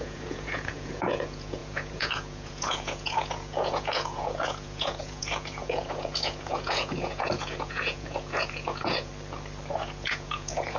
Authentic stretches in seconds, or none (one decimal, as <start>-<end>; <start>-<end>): 9.1-9.7